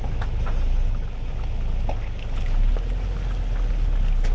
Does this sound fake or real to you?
real